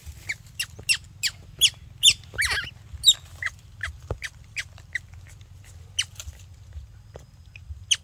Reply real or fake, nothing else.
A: real